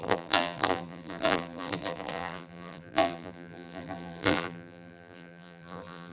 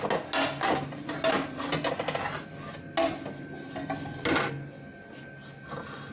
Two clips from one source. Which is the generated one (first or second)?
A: first